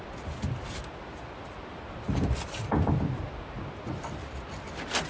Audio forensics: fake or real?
real